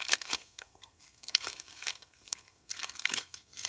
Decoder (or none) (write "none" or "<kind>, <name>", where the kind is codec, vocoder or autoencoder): codec, SNAC